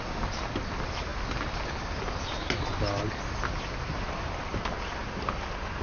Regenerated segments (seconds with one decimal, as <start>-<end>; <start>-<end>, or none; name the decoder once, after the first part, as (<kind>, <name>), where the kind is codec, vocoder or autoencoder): none